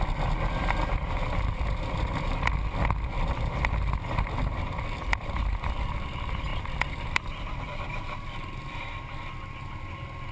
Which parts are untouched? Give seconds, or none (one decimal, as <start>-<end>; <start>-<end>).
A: 0.0-10.3